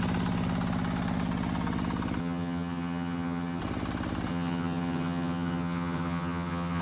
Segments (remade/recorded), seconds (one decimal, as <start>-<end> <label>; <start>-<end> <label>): 0.0-2.2 recorded; 2.2-3.6 remade; 3.6-4.3 recorded; 4.3-6.8 remade